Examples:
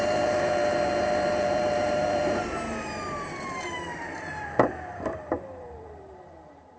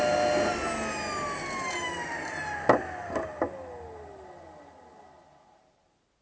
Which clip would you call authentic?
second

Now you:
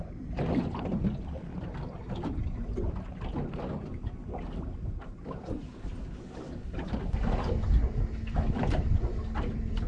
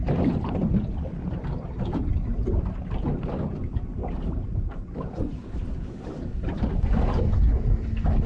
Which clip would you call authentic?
first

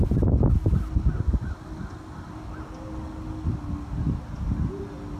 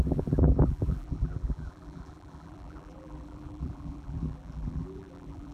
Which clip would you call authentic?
first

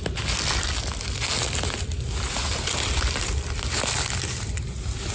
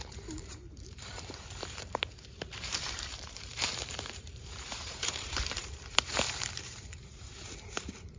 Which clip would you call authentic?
first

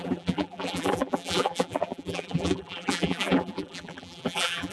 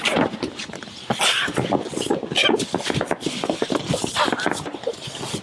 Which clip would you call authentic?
second